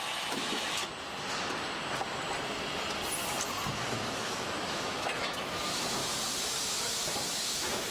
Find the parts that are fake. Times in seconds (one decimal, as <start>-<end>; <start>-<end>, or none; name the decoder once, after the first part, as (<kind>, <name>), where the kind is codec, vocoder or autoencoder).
0.0-0.8 (autoencoder, DAC-VAE); 3.7-6.0; 6.6-7.9